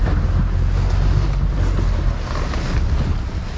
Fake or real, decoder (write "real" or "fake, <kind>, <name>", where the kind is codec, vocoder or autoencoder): real